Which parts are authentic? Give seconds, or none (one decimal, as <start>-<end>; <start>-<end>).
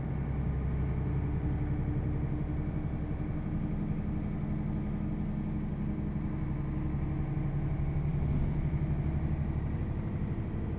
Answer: 0.0-10.8